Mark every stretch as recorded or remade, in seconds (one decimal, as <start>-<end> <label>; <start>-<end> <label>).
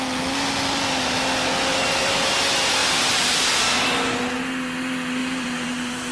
0.0-1.7 recorded; 1.7-2.3 remade; 2.3-2.8 recorded; 2.8-3.5 remade; 3.5-5.2 recorded; 5.2-6.1 remade